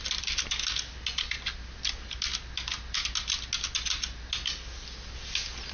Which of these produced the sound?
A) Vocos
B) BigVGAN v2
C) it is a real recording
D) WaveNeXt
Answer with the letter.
C